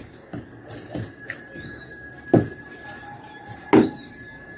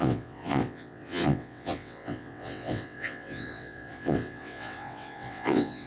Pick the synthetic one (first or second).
second